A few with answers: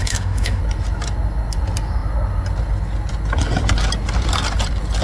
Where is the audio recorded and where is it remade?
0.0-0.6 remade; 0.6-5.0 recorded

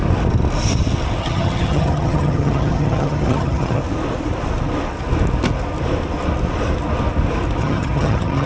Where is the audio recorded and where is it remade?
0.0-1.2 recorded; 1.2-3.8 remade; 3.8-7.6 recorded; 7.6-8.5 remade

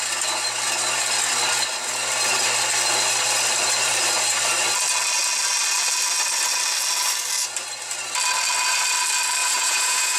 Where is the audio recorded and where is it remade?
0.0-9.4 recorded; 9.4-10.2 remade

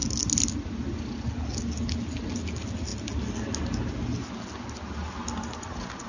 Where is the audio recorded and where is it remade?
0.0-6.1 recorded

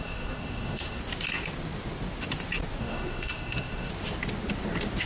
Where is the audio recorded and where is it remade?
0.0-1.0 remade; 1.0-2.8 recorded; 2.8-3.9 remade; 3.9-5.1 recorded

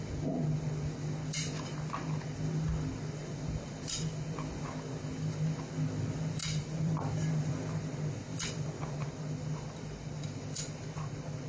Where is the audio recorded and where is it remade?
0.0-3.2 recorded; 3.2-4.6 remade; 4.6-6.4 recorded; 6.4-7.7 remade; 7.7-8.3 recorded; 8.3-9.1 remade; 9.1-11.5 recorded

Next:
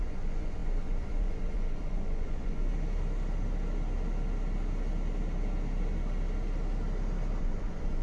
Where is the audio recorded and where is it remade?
0.0-2.7 remade; 2.7-7.4 recorded; 7.4-8.0 remade

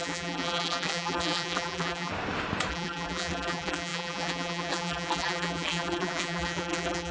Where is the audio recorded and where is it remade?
0.0-2.1 remade; 2.1-2.7 recorded; 2.7-7.1 remade